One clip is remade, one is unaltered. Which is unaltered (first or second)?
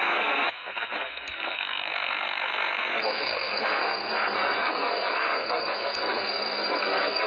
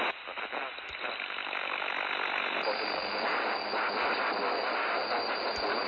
second